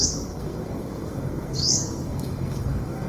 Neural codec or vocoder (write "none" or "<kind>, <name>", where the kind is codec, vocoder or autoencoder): codec, SNAC